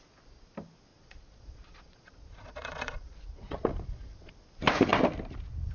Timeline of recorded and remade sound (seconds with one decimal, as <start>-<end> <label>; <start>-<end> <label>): 0.0-0.9 recorded; 0.9-4.3 remade; 4.3-5.7 recorded